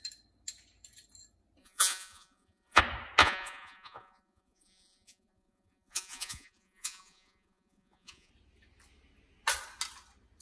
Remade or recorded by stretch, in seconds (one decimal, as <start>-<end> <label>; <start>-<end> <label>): 0.0-1.6 recorded; 1.6-2.8 remade; 2.8-3.2 recorded; 3.2-8.3 remade; 8.3-10.4 recorded